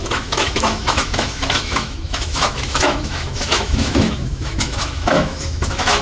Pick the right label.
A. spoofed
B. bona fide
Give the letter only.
A